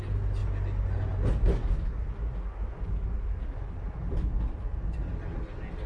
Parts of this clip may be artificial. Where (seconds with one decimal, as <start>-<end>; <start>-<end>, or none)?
none